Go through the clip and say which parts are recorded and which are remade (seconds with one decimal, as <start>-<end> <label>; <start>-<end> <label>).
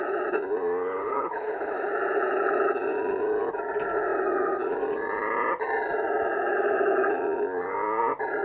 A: 0.0-1.0 recorded; 1.0-1.9 remade; 1.9-8.4 recorded